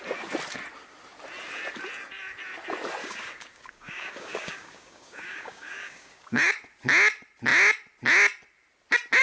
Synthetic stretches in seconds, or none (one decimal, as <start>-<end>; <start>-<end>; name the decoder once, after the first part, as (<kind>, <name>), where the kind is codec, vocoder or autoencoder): 3.0-6.5 (codec, DAC)